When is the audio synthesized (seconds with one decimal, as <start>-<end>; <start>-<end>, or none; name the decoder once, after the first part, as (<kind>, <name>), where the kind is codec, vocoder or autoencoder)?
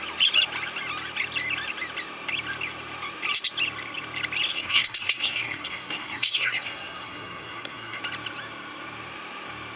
4.5-8.0 (codec, SNAC)